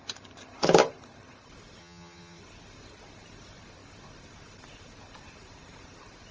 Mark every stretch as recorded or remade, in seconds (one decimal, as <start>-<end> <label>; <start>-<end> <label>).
0.0-1.8 recorded; 1.8-2.4 remade; 2.4-6.3 recorded